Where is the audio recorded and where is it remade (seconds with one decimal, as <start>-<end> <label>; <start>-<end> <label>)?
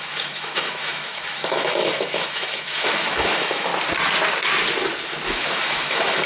0.0-3.7 remade; 3.7-5.3 recorded; 5.3-6.3 remade